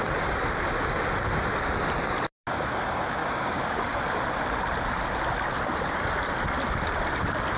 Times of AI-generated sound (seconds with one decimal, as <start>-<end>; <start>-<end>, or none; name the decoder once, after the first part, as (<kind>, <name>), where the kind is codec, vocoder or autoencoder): 3.2-3.8 (codec, DAC)